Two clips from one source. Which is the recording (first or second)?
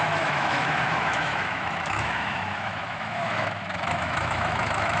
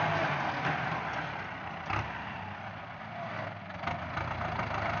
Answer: second